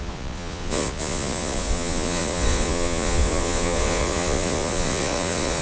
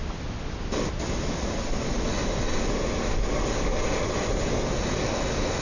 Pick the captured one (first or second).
second